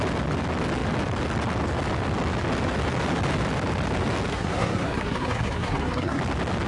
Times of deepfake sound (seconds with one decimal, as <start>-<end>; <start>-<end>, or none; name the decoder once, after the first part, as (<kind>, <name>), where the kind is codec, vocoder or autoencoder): 4.3-6.2 (codec, SNAC)